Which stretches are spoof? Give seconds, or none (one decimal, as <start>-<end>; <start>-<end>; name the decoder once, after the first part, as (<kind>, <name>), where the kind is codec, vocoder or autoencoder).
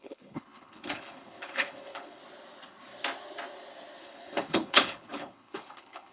0.0-2.2 (codec, HILCodec); 4.0-6.1